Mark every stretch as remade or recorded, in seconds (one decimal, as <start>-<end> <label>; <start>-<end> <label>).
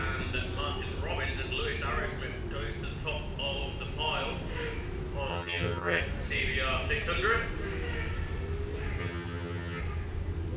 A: 0.0-5.3 recorded; 5.3-6.0 remade; 6.0-9.0 recorded; 9.0-9.8 remade; 9.8-10.6 recorded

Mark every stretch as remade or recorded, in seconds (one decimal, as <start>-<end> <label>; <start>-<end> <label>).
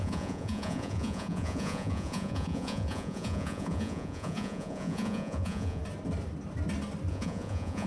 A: 0.0-5.8 remade; 5.8-7.1 recorded; 7.1-7.9 remade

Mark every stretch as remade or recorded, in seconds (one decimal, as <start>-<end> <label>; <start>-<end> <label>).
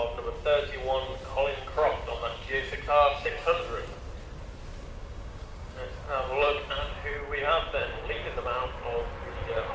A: 0.0-1.3 recorded; 1.3-3.6 remade; 3.6-4.8 recorded; 4.8-5.8 remade; 5.8-9.7 recorded